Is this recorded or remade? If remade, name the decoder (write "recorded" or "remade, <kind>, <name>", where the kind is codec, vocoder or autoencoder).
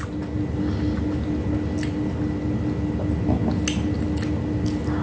recorded